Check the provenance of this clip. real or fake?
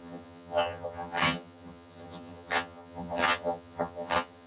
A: fake